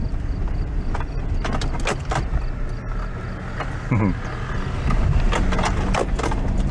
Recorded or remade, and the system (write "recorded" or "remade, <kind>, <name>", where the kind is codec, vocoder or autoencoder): recorded